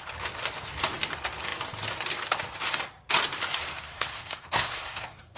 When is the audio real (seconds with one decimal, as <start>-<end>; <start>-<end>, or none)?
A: 0.0-3.9